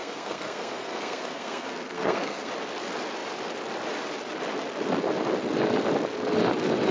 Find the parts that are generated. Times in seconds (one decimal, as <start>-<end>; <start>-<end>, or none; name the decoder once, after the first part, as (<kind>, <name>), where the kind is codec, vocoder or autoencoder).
0.0-2.5 (codec, SNAC)